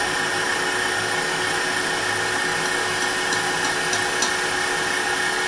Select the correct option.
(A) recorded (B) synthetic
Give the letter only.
A